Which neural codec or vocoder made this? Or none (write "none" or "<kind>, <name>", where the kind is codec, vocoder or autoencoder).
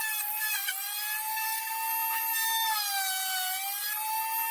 none